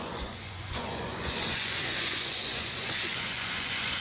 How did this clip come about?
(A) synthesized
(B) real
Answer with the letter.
A